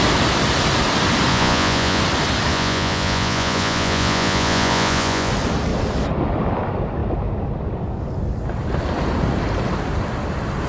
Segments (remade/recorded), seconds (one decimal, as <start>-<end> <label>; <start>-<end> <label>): 0.0-1.3 recorded; 1.3-2.0 remade; 2.0-2.5 recorded; 2.5-5.3 remade; 5.3-10.7 recorded